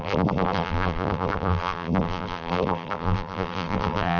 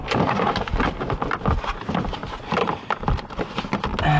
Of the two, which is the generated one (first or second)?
first